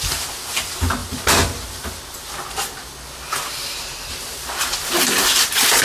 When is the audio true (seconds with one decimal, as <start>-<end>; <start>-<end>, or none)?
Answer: 0.0-5.8